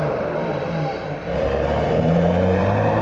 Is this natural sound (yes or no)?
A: no